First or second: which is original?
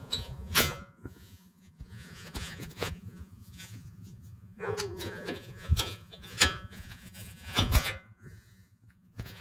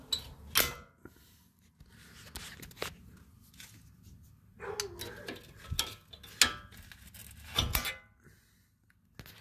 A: second